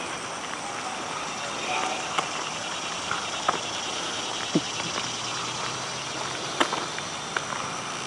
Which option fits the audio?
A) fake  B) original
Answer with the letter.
B